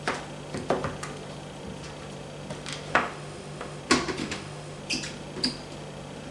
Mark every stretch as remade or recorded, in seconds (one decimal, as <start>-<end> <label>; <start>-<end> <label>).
0.0-2.9 recorded; 2.9-3.8 remade; 3.8-4.2 recorded; 4.2-4.8 remade; 4.8-6.3 recorded

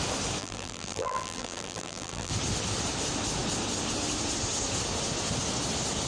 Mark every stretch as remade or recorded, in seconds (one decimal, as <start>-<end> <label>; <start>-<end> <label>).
0.0-0.4 recorded; 0.4-2.3 remade; 2.3-6.1 recorded

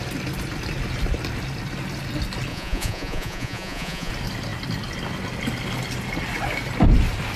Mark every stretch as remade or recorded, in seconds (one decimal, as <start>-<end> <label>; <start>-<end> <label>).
0.0-2.5 recorded; 2.5-4.1 remade; 4.1-7.4 recorded